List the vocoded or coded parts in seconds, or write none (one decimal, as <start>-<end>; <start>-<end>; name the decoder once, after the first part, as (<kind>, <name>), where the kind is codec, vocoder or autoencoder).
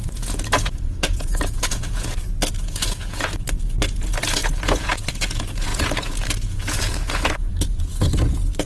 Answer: 0.0-8.7 (vocoder, Vocos)